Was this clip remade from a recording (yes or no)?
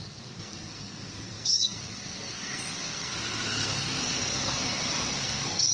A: yes